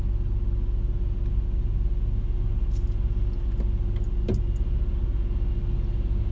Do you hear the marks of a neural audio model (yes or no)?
no